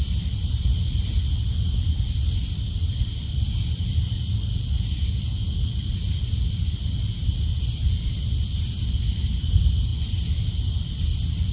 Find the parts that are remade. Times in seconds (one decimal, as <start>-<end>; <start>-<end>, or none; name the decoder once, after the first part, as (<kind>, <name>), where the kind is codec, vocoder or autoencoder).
0.0-11.5 (vocoder, BigVGAN v2)